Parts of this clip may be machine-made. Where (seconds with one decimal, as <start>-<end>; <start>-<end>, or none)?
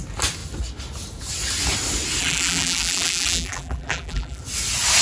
2.2-4.4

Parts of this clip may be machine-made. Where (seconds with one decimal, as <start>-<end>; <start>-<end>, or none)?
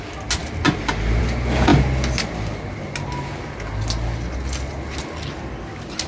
none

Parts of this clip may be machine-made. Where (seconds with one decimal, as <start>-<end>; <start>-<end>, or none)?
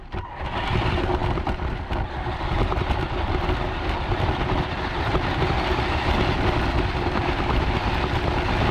none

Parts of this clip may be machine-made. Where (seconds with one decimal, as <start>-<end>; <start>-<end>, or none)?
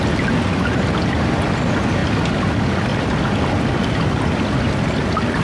none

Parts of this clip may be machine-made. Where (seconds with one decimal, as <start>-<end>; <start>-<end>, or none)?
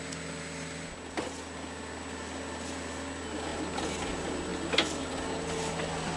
none